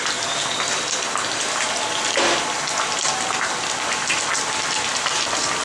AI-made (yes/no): no